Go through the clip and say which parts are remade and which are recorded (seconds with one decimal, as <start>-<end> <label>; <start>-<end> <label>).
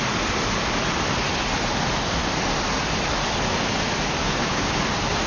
0.0-4.2 recorded; 4.2-4.8 remade; 4.8-5.3 recorded